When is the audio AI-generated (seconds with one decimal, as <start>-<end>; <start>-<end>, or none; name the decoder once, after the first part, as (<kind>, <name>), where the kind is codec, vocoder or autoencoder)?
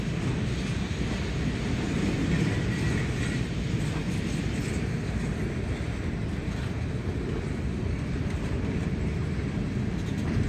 none